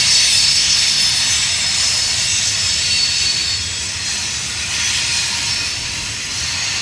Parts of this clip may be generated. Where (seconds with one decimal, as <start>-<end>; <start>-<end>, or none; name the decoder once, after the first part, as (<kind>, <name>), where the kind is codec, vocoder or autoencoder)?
0.4-1.0 (codec, SNAC)